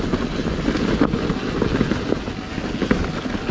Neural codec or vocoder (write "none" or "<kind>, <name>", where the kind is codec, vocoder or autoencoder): none